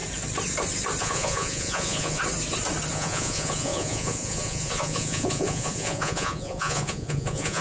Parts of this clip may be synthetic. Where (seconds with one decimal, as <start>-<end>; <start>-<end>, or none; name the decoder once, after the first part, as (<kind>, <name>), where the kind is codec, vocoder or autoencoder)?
1.0-2.2 (vocoder, Vocos); 2.9-7.6

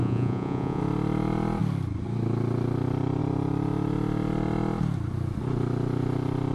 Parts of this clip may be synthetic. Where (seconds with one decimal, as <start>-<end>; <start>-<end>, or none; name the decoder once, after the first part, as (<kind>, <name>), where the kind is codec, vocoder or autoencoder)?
0.0-0.8 (vocoder, Vocos)

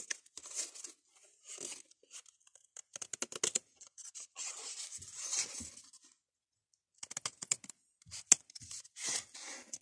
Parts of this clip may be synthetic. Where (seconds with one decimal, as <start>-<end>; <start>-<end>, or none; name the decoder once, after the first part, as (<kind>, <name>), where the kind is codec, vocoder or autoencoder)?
3.7-4.8 (vocoder, Vocos)